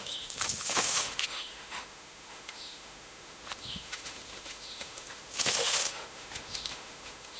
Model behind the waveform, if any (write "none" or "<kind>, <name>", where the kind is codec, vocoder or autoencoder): autoencoder, DAC-VAE